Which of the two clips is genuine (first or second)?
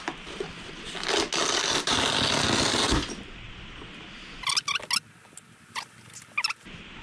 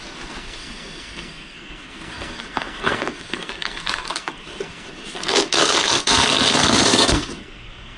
first